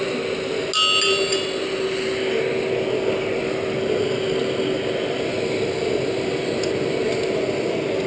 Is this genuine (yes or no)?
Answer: yes